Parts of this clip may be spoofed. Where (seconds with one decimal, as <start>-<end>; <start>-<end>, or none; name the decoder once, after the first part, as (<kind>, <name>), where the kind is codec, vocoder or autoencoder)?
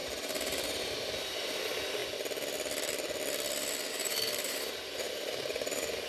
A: 0.0-2.0 (vocoder, BigVGAN v2); 3.9-6.1